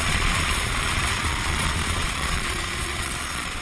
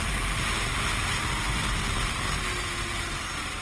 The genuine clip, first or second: second